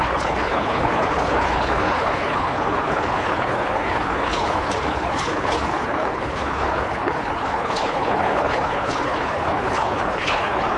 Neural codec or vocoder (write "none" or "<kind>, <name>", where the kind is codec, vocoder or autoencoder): codec, HILCodec